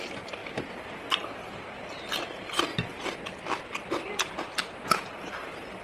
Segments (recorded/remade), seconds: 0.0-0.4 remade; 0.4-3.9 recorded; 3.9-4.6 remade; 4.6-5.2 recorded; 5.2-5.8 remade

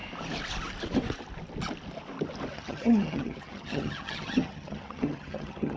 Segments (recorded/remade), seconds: 0.0-2.5 recorded; 2.5-5.8 remade

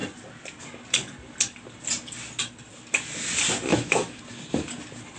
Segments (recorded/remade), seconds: 0.0-3.7 recorded; 3.7-4.2 remade; 4.2-5.2 recorded

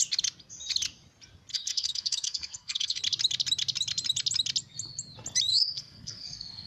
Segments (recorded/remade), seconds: 0.0-1.5 recorded; 1.5-3.0 remade; 3.0-5.5 recorded; 5.5-6.7 remade

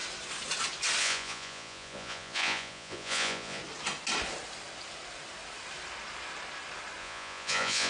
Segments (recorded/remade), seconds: 0.0-1.0 recorded; 1.0-3.6 remade; 3.6-7.0 recorded; 7.0-7.9 remade